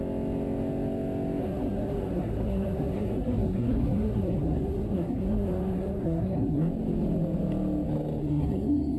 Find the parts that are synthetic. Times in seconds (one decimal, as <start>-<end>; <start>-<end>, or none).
1.4-6.6; 8.2-9.0